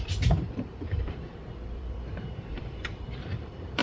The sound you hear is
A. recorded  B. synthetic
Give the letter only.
B